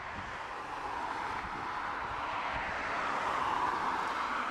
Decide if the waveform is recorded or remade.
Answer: recorded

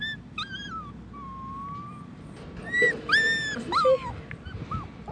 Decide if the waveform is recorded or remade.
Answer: recorded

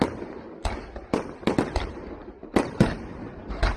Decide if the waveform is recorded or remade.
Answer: recorded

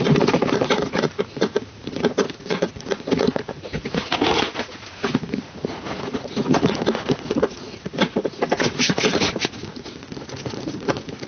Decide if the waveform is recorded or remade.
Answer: remade